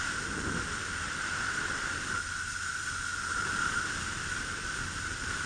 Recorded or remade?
remade